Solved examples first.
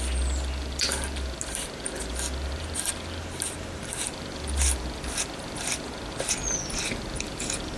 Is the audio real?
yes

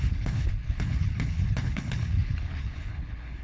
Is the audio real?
no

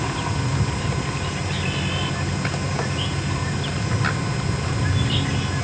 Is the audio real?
yes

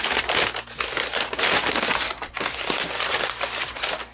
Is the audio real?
yes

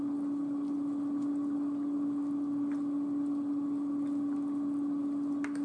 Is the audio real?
yes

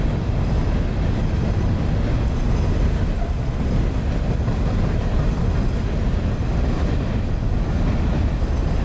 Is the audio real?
yes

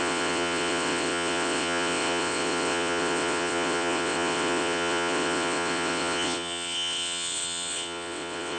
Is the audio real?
no